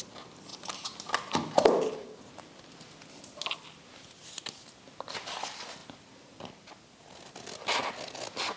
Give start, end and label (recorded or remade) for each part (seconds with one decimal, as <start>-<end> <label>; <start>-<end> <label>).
0.0-8.6 recorded

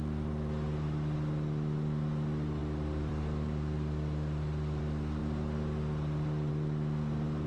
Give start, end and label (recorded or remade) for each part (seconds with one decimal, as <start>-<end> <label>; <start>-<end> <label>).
0.0-2.6 recorded; 2.6-4.8 remade; 4.8-7.5 recorded

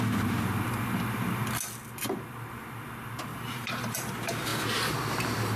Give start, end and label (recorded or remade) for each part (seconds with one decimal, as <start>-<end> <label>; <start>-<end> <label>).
0.0-3.3 recorded; 3.3-4.1 remade; 4.1-5.6 recorded

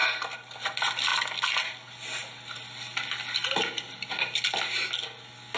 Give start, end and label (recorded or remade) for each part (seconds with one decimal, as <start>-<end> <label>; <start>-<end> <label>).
0.0-5.6 recorded

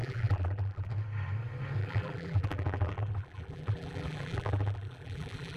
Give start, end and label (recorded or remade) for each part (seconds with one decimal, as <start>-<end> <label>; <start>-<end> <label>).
0.0-0.9 remade; 0.9-1.8 recorded; 1.8-5.6 remade

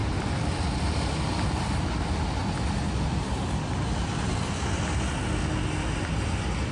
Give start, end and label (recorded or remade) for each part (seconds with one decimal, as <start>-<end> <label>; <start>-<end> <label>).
0.0-1.9 remade; 1.9-6.7 recorded